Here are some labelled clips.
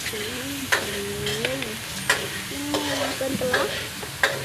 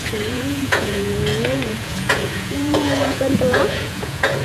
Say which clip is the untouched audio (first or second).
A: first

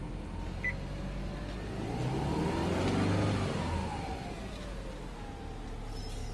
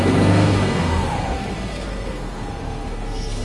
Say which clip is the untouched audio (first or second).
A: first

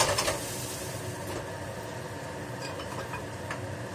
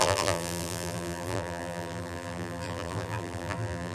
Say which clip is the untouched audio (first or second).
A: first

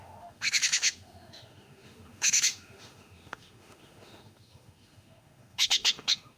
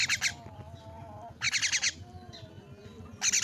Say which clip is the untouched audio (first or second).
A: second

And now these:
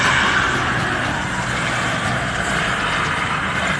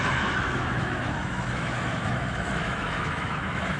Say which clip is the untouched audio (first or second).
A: first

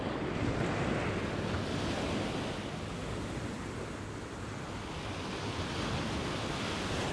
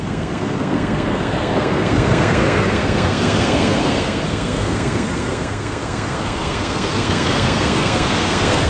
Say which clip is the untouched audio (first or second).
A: first